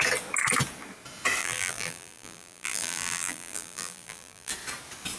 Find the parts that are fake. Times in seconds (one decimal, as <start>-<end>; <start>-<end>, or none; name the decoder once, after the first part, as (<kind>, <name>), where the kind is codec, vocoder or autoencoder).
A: 1.4-4.5 (vocoder, BigVGAN v2)

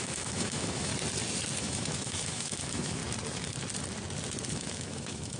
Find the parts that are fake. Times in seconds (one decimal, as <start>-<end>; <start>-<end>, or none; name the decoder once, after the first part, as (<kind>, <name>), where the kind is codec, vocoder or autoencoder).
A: 0.0-0.9 (autoencoder, DAC-VAE); 1.6-3.0; 4.4-5.4

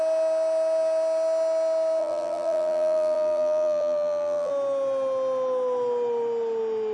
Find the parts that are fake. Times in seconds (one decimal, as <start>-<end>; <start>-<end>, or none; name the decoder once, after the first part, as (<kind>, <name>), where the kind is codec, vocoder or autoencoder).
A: 2.0-4.5 (vocoder, BigVGAN v2)

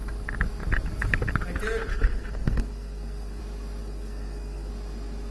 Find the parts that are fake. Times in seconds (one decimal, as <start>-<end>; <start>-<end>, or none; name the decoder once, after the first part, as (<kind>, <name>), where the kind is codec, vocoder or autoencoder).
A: 1.9-3.4 (codec, SNAC); 3.8-4.7

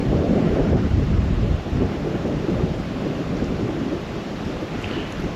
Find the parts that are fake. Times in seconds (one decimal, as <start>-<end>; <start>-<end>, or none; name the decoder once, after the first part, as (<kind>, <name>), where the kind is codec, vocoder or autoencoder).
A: 0.0-3.0 (vocoder, BigVGAN v2)

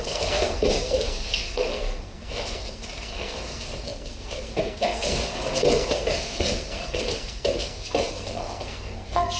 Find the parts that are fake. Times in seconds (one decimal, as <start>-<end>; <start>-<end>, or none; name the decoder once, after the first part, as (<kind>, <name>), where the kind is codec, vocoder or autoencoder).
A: 0.0-9.4 (codec, SNAC)

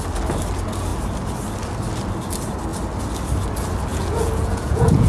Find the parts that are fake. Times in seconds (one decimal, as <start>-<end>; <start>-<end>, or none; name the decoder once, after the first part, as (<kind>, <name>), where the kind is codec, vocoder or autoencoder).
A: 3.9-5.1 (vocoder, Vocos)

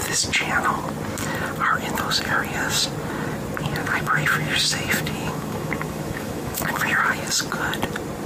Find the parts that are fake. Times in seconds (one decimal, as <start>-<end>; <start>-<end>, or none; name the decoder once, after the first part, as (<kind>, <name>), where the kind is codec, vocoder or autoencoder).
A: 3.8-7.0 (autoencoder, DAC-VAE)